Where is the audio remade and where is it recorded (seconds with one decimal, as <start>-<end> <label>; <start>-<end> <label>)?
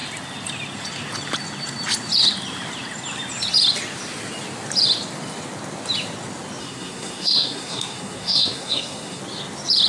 0.0-6.6 recorded; 6.6-9.2 remade; 9.2-9.9 recorded